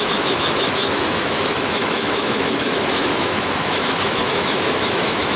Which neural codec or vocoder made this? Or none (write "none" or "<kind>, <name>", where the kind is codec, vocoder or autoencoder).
autoencoder, DAC-VAE